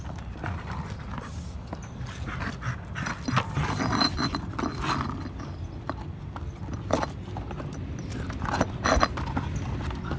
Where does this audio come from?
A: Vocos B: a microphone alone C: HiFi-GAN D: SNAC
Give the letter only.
B